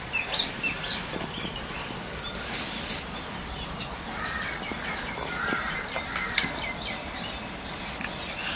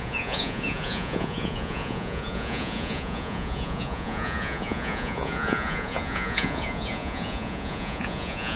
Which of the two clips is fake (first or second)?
second